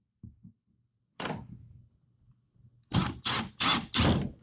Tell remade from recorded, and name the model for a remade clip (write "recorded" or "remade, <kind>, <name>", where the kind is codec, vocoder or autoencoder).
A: recorded